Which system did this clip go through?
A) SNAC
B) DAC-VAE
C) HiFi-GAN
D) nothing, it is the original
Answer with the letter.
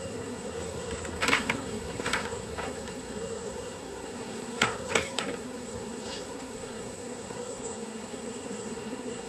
A